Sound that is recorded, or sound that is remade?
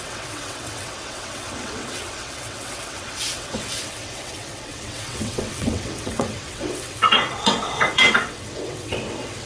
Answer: remade